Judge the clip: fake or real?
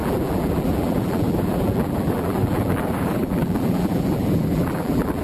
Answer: fake